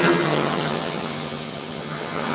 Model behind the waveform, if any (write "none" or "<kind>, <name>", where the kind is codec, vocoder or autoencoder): vocoder, HiFi-GAN